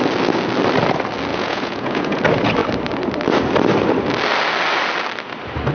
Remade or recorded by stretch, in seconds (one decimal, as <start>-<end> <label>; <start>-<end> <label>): 0.0-1.3 recorded; 1.3-2.2 remade; 2.2-5.7 recorded